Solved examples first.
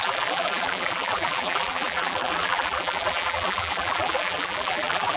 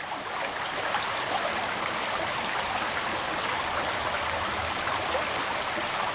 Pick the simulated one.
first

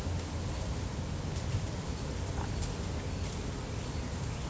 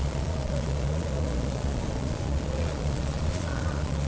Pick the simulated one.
second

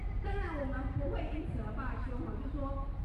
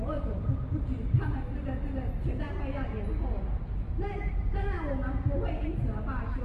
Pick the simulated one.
first